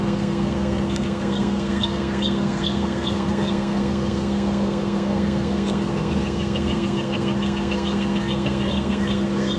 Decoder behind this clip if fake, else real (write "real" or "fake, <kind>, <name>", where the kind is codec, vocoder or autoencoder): fake, codec, SNAC